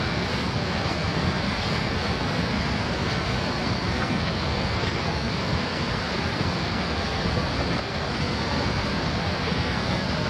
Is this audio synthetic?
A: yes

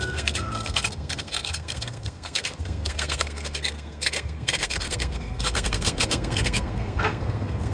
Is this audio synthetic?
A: yes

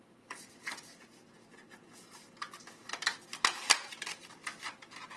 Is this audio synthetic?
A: no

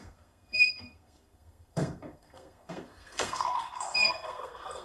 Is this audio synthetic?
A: yes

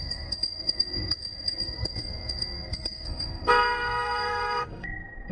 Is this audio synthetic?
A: yes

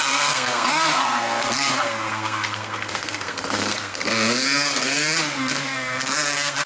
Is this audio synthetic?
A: yes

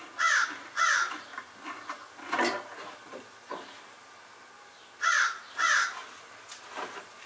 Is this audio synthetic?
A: no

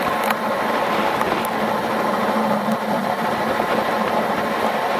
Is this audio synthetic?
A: no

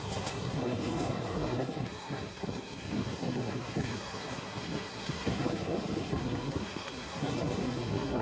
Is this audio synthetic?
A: yes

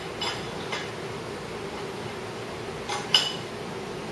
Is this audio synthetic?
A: no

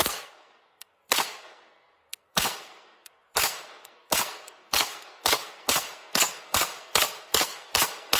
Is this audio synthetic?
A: yes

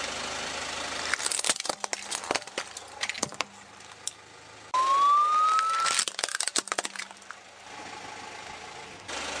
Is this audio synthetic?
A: no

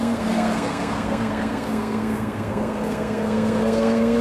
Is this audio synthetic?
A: yes